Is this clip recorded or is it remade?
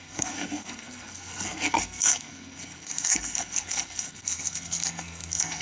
remade